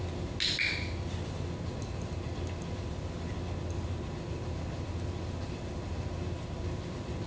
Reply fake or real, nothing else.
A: real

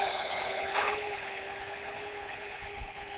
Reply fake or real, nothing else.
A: fake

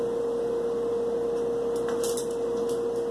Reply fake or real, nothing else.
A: real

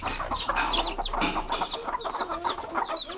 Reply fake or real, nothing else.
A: real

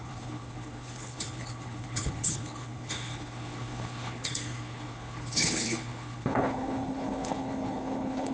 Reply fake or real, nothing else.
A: fake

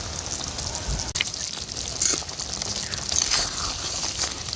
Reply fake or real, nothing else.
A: real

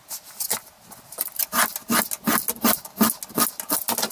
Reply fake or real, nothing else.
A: real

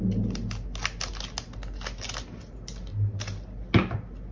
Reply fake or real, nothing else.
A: real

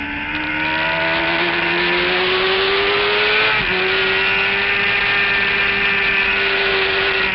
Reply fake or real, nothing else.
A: real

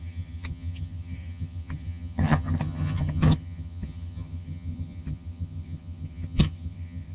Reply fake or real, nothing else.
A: fake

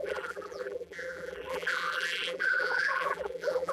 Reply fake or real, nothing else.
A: fake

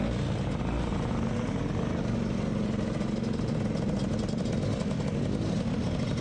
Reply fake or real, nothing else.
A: real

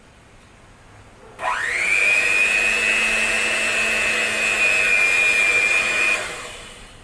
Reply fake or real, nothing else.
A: real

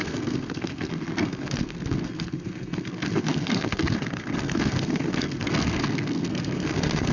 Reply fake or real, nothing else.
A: fake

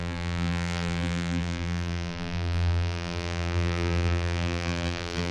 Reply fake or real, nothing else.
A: fake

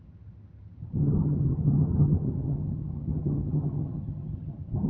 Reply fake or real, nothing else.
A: fake